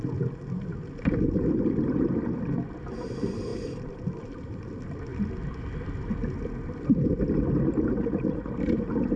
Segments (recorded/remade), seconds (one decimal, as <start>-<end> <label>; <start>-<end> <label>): 0.0-9.2 recorded